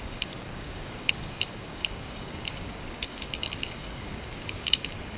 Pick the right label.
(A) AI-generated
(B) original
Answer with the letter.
A